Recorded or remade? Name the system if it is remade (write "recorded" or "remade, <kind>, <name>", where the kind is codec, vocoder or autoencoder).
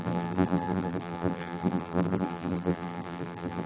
remade, vocoder, BigVGAN v2